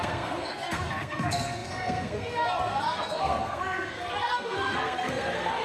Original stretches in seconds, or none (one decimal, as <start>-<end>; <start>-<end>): none